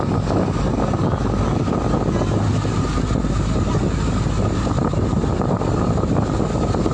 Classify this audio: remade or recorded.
recorded